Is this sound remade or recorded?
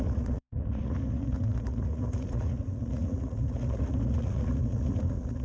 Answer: remade